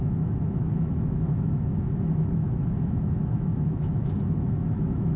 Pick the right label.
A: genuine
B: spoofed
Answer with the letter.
B